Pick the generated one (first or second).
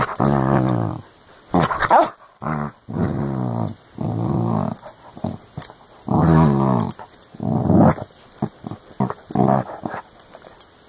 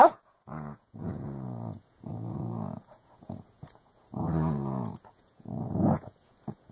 second